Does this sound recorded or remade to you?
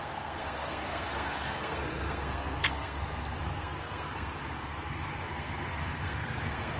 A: remade